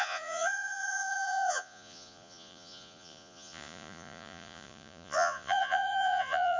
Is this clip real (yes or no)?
no